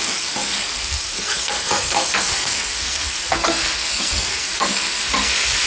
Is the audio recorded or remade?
remade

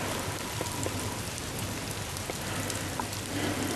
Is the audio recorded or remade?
recorded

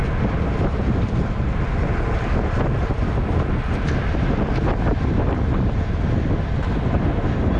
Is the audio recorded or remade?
recorded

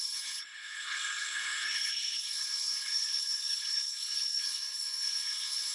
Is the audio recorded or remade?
remade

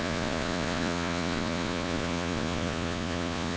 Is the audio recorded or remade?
remade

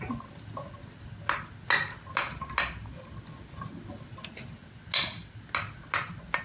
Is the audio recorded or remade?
recorded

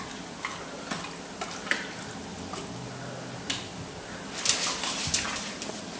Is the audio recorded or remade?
recorded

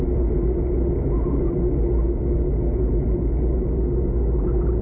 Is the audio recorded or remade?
recorded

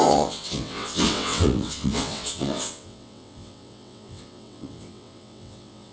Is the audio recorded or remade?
remade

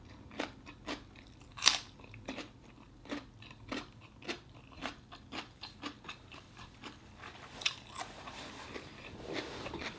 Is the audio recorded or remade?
remade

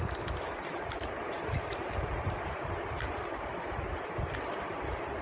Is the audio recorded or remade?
remade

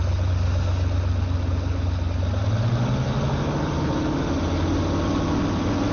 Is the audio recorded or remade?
recorded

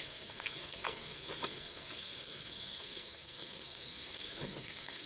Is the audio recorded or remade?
remade